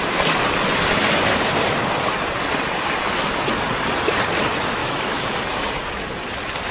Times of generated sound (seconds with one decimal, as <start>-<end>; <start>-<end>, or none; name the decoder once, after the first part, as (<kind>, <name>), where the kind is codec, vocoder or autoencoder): 4.8-5.4 (autoencoder, DAC-VAE)